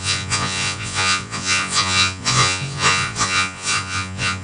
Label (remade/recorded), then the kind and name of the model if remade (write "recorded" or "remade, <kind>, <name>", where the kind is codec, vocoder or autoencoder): remade, vocoder, Vocos